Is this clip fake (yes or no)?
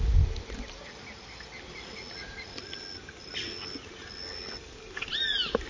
no